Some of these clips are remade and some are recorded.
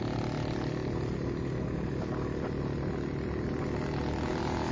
recorded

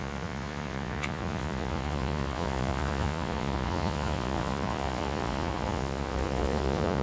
remade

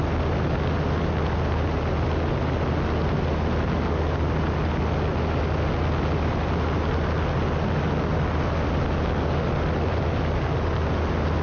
recorded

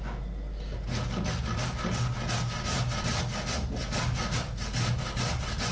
recorded